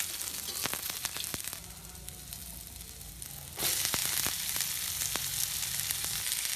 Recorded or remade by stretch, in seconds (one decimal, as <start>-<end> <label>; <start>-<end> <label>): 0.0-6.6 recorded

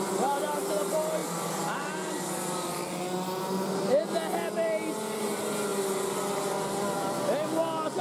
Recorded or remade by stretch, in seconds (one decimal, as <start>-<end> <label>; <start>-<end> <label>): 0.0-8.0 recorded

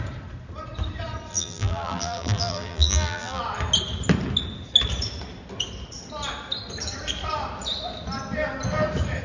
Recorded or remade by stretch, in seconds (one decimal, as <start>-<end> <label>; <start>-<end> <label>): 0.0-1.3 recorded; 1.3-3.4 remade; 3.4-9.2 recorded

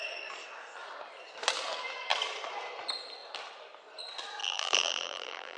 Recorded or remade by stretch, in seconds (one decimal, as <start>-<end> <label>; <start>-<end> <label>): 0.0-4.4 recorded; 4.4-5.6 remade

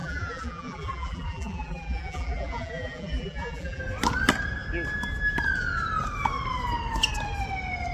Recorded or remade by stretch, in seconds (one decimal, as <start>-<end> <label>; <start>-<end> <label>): 0.0-3.8 remade; 3.8-7.9 recorded

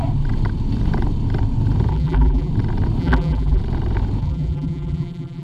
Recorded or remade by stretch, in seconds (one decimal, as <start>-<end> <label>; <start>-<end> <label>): 0.0-1.9 recorded; 1.9-2.5 remade; 2.5-3.0 recorded; 3.0-3.6 remade; 3.6-4.2 recorded; 4.2-5.4 remade